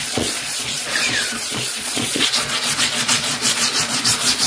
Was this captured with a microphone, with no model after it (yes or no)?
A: no